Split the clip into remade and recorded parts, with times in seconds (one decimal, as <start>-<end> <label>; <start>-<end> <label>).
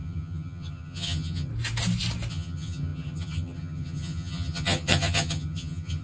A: 0.0-1.5 remade; 1.5-2.3 recorded; 2.3-6.0 remade